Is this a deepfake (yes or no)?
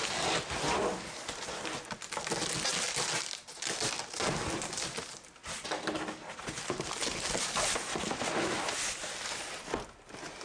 no